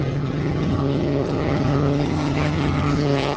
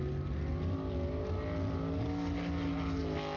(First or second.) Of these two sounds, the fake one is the first